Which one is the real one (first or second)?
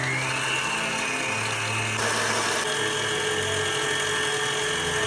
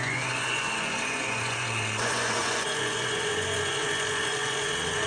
first